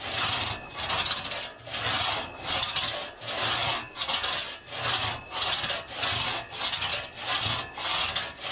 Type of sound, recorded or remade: recorded